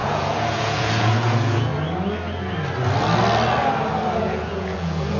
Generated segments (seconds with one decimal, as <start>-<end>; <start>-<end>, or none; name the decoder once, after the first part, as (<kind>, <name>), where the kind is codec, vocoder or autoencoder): 0.0-1.7 (vocoder, Vocos); 4.2-5.2